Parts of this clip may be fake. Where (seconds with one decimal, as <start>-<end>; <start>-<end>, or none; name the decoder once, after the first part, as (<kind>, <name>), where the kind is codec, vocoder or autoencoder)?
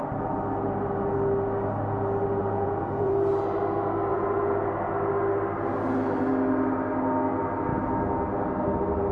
2.4-3.1 (vocoder, Vocos); 4.1-4.7